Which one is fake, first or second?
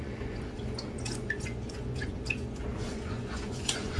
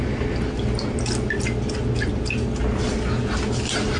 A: first